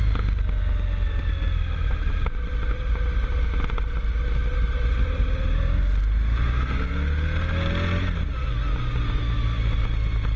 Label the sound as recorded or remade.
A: recorded